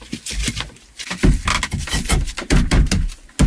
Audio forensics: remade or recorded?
recorded